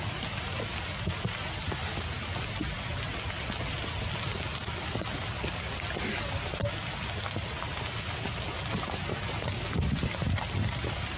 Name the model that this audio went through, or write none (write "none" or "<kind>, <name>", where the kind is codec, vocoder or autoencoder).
none